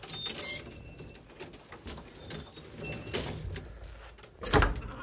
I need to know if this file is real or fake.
real